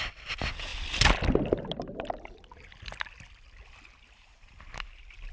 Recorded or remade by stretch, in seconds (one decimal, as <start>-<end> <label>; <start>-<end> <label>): 0.0-5.3 recorded